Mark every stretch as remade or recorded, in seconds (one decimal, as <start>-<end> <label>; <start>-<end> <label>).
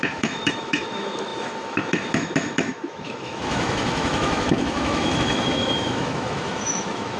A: 0.0-7.2 remade